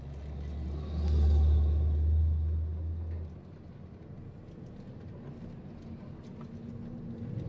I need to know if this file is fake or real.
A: real